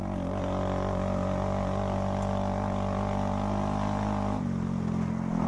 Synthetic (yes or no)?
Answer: no